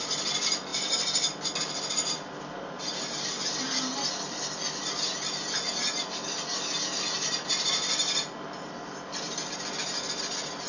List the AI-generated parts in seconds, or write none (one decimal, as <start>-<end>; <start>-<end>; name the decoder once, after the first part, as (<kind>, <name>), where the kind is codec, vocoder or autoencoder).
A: none